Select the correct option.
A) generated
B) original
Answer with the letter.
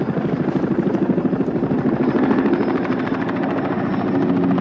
B